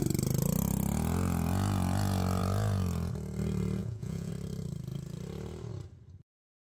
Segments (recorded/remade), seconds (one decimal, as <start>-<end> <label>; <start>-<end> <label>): 0.0-3.8 recorded; 3.8-4.3 remade; 4.3-6.7 recorded